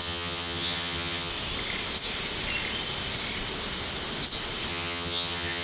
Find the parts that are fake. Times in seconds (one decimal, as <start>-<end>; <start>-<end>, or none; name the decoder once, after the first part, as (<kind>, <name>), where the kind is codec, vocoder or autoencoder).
0.0-1.3 (vocoder, HiFi-GAN); 4.7-5.6